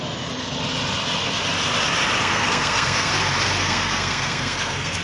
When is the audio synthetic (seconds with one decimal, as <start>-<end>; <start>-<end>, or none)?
2.2-3.1; 3.6-5.0